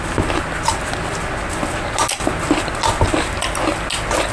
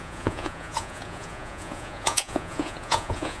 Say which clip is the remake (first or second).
second